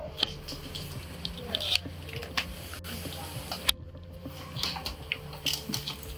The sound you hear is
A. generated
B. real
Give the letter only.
B